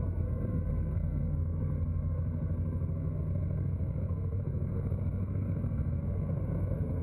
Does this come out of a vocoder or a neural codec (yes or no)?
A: yes